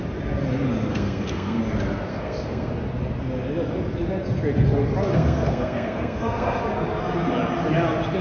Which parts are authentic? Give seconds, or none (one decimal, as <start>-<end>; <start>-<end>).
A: 0.0-0.9; 1.6-2.1; 2.7-5.1; 6.6-8.2